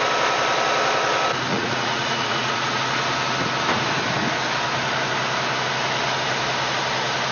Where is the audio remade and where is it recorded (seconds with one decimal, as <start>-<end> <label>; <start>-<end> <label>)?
0.0-1.5 recorded; 1.5-2.8 remade; 2.8-7.3 recorded